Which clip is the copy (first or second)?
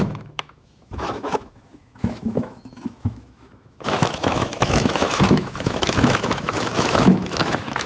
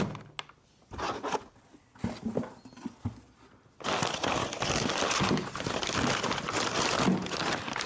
first